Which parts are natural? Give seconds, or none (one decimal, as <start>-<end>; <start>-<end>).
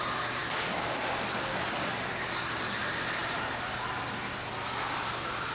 0.0-5.5